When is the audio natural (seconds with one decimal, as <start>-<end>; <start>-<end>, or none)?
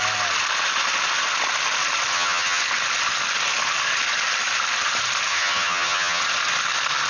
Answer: 0.0-2.1; 2.6-5.3; 6.2-7.1